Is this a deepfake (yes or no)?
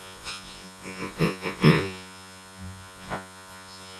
yes